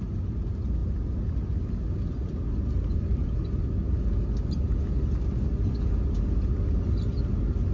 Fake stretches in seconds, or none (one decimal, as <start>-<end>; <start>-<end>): 2.9-4.0